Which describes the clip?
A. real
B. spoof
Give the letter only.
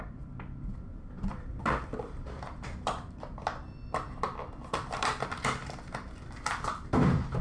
B